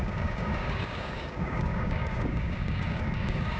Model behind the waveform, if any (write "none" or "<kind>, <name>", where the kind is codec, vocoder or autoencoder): codec, DAC